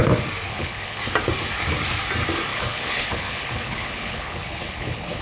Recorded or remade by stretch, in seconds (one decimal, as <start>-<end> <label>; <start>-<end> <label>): 0.0-0.5 recorded; 0.5-1.0 remade; 1.0-2.5 recorded; 2.5-5.2 remade